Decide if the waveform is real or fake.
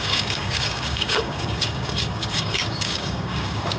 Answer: fake